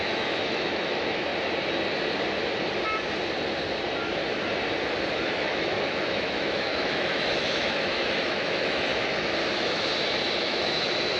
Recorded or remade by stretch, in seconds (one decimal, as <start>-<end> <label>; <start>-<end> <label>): 0.0-1.3 remade; 1.3-5.2 recorded; 5.2-8.9 remade; 8.9-9.5 recorded; 9.5-9.9 remade; 9.9-10.4 recorded; 10.4-11.2 remade